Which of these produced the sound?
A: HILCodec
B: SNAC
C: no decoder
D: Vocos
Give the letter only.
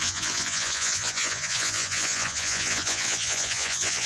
D